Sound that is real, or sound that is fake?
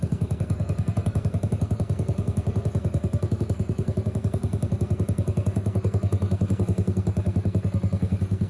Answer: fake